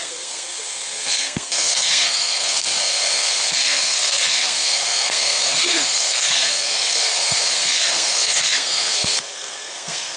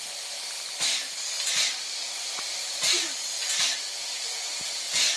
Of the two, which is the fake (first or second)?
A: first